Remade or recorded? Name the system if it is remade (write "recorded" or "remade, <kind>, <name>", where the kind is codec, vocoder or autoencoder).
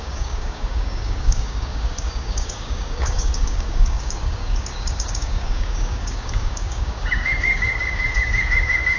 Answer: remade, codec, DAC